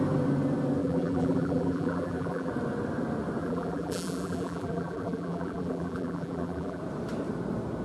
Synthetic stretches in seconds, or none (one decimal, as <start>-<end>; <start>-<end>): 0.8-2.5; 3.4-6.8